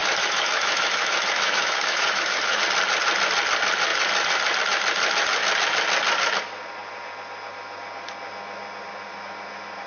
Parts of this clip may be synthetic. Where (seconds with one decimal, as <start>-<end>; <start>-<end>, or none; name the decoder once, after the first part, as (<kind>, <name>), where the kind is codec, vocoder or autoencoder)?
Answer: 0.0-2.6 (autoencoder, DAC-VAE)